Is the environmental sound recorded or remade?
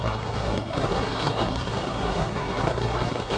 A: remade